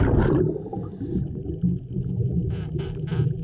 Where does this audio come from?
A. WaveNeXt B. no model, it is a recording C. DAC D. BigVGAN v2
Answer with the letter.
B